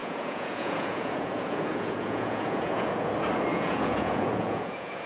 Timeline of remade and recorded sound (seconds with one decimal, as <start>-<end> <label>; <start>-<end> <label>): 0.0-3.1 remade; 3.1-3.5 recorded; 3.5-5.1 remade